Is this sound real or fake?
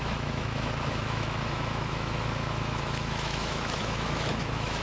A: fake